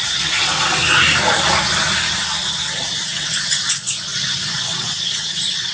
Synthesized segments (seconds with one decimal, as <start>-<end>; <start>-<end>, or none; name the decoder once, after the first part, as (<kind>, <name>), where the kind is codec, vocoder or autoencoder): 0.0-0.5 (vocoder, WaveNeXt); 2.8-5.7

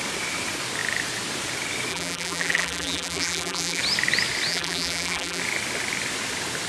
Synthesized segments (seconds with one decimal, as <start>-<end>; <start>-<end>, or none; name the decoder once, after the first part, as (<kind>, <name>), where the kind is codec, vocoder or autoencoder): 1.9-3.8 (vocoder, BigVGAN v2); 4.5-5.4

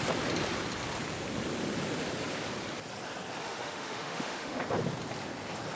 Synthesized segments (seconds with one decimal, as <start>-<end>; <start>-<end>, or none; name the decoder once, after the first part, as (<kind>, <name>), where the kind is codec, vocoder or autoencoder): 3.4-4.6 (autoencoder, DAC-VAE)